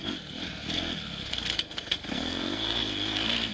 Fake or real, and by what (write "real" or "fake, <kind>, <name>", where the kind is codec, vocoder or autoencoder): fake, codec, SNAC